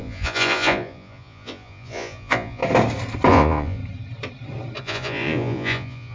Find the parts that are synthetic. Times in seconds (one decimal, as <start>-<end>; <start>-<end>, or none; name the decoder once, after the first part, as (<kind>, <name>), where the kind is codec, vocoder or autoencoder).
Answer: 0.0-2.6 (vocoder, Vocos); 3.3-3.8; 4.8-6.1